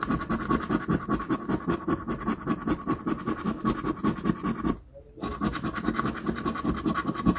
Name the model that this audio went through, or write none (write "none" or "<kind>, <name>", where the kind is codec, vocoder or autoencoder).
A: none